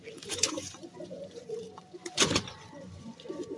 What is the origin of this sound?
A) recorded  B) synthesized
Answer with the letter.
B